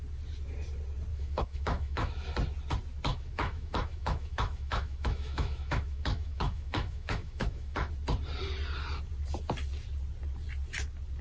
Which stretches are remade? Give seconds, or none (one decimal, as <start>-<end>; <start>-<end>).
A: 1.1-2.1; 3.1-7.9